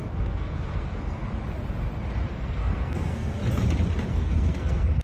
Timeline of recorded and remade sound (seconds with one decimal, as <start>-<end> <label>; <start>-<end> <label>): 0.0-1.2 remade; 1.2-2.3 recorded; 2.3-3.4 remade; 3.4-4.1 recorded; 4.1-5.0 remade